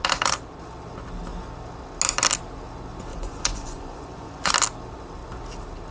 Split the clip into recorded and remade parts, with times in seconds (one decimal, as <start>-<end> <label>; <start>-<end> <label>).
0.0-3.1 recorded; 3.1-4.5 remade; 4.5-5.9 recorded